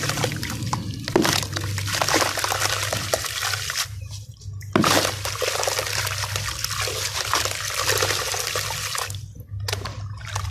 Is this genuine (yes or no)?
yes